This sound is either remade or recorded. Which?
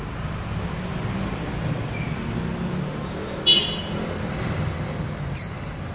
recorded